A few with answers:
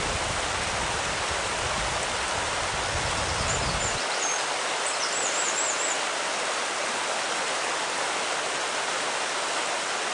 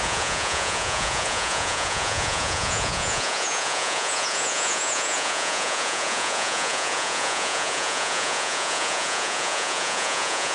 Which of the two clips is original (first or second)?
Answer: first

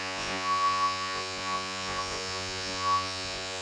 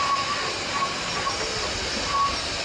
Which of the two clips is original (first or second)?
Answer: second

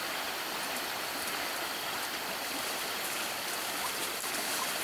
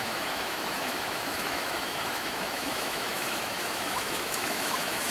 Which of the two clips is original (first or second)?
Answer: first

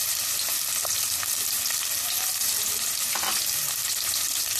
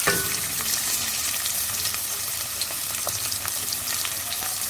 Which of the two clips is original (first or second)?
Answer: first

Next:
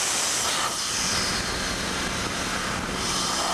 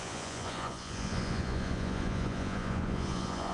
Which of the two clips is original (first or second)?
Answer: first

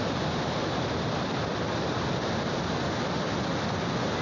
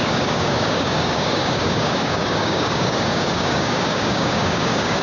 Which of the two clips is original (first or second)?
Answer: first